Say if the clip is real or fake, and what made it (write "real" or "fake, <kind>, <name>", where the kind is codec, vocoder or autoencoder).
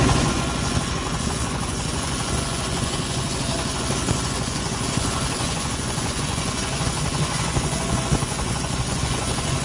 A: fake, vocoder, Vocos